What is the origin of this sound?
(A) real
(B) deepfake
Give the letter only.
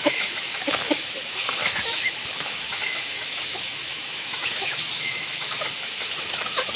B